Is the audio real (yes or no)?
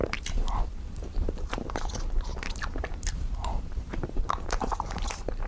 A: no